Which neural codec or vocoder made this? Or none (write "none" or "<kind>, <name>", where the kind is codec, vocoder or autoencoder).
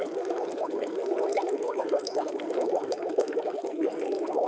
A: codec, SNAC